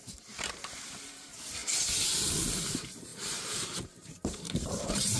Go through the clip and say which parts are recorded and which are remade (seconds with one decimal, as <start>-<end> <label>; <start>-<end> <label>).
0.0-1.6 remade; 1.6-2.6 recorded; 2.6-5.2 remade